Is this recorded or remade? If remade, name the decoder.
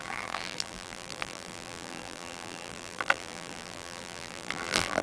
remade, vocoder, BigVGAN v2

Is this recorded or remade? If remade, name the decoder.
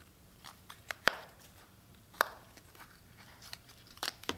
remade, vocoder, BigVGAN v2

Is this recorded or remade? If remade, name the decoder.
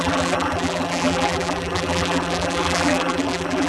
remade, vocoder, BigVGAN v2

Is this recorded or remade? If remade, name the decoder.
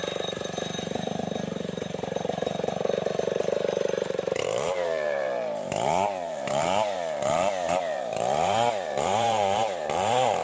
remade, vocoder, BigVGAN v2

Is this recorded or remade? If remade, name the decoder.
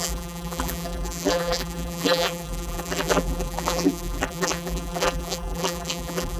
remade, vocoder, BigVGAN v2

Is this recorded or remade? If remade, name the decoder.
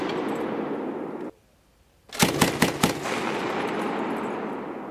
recorded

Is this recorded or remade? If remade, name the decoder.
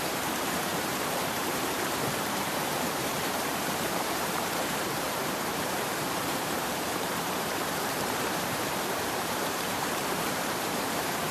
remade, vocoder, BigVGAN v2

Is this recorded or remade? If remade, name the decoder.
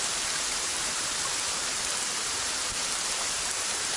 remade, vocoder, BigVGAN v2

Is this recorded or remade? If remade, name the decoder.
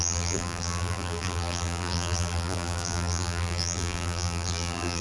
remade, vocoder, BigVGAN v2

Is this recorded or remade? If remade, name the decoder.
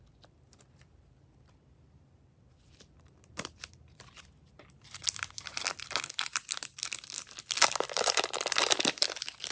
remade, vocoder, BigVGAN v2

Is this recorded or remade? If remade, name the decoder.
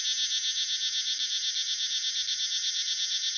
recorded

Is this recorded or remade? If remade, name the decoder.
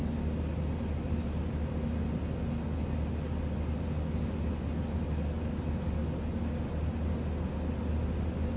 recorded